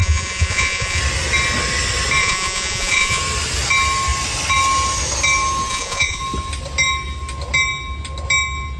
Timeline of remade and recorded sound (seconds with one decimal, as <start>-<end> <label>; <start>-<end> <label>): 0.0-1.0 remade; 1.0-2.2 recorded; 2.2-3.2 remade; 3.2-5.7 recorded; 5.7-6.2 remade; 6.2-8.8 recorded